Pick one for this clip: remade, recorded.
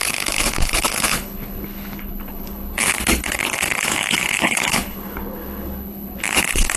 remade